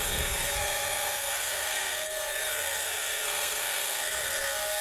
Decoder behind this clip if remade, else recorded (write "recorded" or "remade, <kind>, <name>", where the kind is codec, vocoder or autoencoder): remade, codec, SNAC